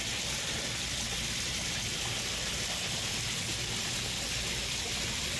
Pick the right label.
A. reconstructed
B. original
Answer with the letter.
B